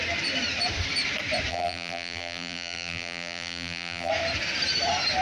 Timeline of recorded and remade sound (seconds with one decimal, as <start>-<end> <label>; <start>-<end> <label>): 0.0-1.5 recorded; 1.5-4.1 remade; 4.1-5.2 recorded